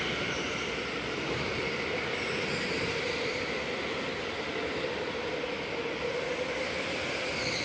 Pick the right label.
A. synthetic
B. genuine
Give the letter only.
B